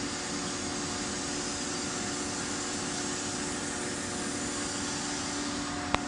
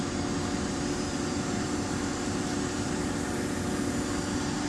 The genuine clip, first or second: first